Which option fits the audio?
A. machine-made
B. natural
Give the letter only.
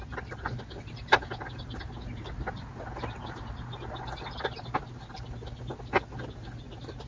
B